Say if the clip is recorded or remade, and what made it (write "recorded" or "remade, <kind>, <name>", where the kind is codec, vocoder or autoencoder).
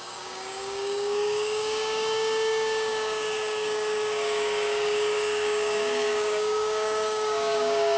remade, codec, DAC